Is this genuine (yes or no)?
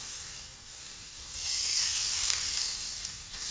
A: no